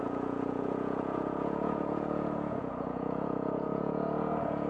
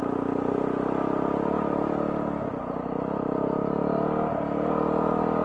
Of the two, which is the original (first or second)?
second